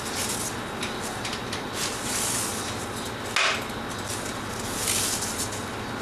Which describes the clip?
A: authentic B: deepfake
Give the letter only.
A